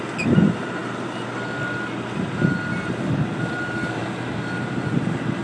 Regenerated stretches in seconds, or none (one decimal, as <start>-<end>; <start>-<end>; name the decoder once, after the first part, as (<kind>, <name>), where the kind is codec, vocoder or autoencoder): none